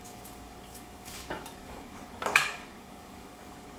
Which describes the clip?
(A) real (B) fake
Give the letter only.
B